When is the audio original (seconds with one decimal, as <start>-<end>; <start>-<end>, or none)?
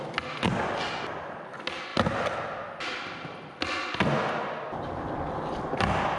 0.0-6.2